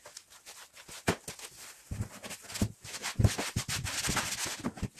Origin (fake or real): real